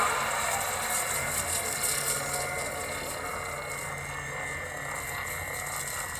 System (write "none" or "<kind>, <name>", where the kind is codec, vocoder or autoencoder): none